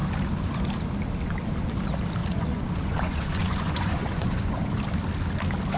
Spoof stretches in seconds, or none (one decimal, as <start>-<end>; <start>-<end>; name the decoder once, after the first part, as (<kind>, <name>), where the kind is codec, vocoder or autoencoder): 2.2-4.7 (vocoder, Vocos)